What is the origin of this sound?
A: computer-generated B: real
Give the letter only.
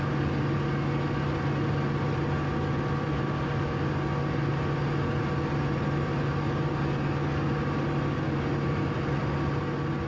B